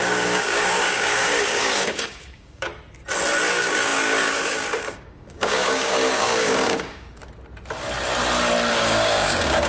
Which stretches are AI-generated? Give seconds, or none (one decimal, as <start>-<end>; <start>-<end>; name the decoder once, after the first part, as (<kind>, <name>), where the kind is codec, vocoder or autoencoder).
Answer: 0.0-2.7 (codec, DAC); 3.5-7.2; 8.7-9.7